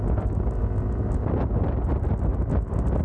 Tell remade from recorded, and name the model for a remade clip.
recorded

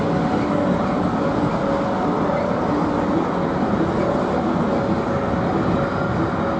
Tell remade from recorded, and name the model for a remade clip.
recorded